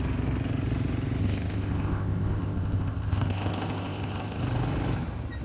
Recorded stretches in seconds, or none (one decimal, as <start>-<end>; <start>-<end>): 0.0-1.2; 4.4-5.4